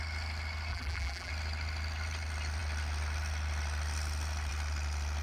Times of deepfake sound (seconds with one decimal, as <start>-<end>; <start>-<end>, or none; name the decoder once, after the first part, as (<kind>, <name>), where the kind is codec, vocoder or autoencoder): 0.7-1.3 (vocoder, BigVGAN v2)